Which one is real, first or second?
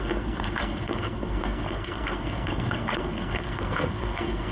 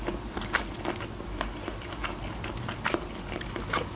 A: second